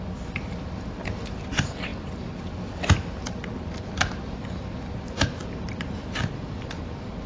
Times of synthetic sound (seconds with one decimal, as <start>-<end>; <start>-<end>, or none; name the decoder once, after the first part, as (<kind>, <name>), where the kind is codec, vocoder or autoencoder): 5.4-6.7 (vocoder, BigVGAN v2)